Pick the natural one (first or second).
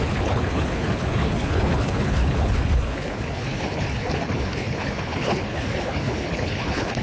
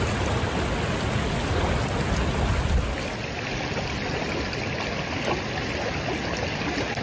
second